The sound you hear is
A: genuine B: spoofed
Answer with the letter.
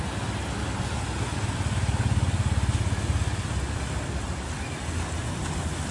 A